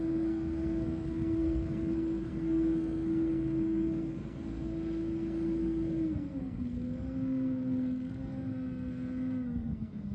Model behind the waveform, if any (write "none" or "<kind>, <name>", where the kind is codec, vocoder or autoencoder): codec, SNAC